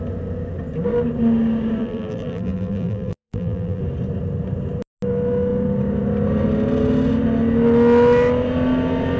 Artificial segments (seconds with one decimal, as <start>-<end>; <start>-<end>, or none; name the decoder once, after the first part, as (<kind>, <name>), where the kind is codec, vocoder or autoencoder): 1.8-3.8 (vocoder, BigVGAN v2)